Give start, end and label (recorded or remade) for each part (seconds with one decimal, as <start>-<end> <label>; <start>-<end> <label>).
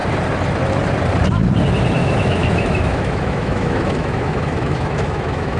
0.0-2.0 recorded; 2.0-5.6 remade